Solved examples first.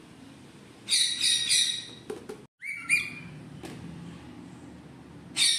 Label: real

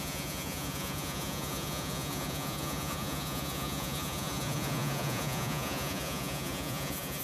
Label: fake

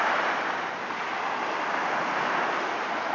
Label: real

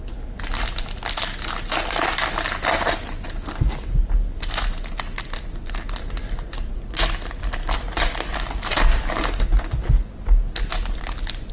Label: real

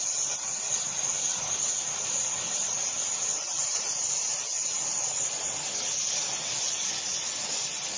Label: real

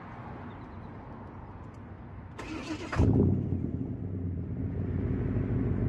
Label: real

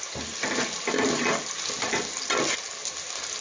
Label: real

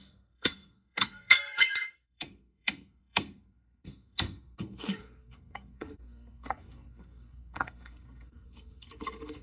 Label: fake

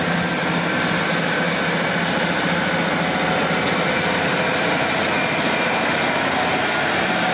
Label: real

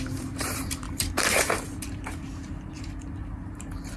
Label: fake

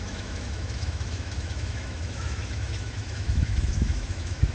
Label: fake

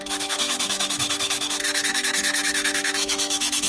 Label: fake